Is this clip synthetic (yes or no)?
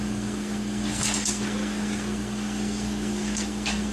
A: yes